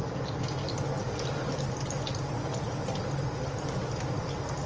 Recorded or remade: recorded